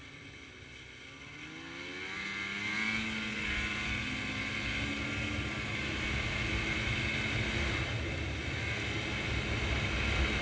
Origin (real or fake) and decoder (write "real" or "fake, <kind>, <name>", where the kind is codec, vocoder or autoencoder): real